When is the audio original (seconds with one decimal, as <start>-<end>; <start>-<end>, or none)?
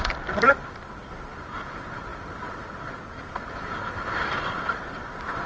0.0-5.5